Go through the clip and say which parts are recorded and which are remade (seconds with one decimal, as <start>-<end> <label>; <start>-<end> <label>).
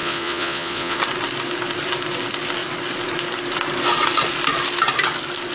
0.0-1.0 remade; 1.0-5.5 recorded